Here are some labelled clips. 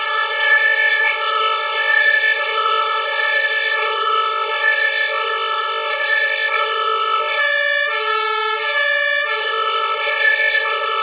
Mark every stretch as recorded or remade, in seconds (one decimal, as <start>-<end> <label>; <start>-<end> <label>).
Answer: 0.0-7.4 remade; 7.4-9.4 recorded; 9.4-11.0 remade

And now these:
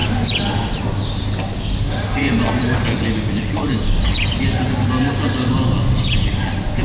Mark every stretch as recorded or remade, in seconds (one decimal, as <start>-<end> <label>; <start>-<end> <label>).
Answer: 0.0-0.8 remade; 0.8-2.2 recorded; 2.2-4.6 remade; 4.6-6.8 recorded

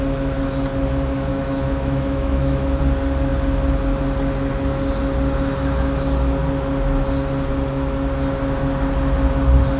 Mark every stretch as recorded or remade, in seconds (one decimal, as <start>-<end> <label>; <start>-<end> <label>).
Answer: 0.0-1.3 recorded; 1.3-2.8 remade; 2.8-9.8 recorded